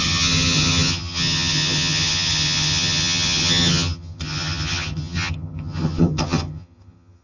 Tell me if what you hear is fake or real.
fake